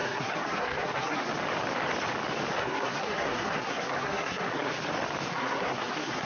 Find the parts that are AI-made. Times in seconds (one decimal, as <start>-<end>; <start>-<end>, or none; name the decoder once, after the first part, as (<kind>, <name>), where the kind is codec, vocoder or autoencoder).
0.0-1.3 (codec, SNAC); 2.6-4.7; 5.3-6.3